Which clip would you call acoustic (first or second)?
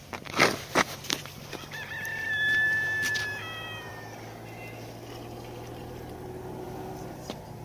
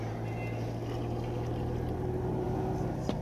second